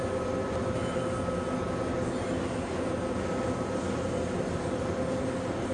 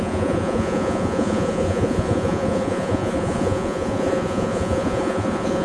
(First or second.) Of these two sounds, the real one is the first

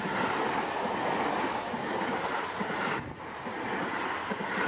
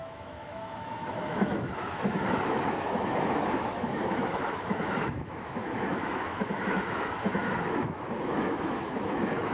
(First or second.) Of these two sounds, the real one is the first